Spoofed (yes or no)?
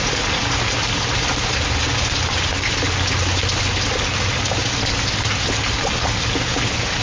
no